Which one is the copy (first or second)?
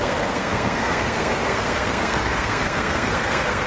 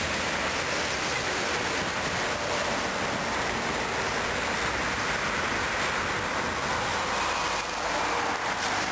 first